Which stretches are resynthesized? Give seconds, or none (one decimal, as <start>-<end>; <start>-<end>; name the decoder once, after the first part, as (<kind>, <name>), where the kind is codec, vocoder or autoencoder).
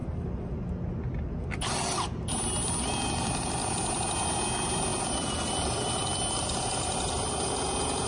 none